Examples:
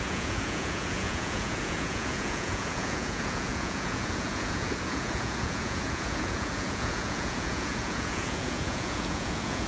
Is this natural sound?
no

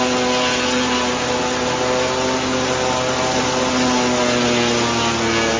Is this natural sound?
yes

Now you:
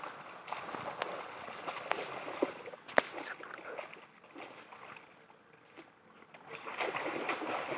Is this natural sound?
yes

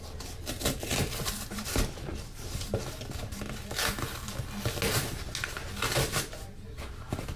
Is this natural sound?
yes